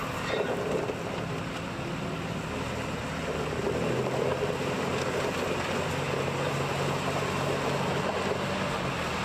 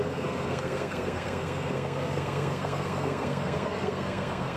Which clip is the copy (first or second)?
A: second